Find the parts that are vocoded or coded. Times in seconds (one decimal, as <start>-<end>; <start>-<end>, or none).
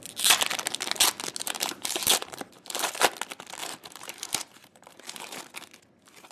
1.4-2.9; 3.6-5.4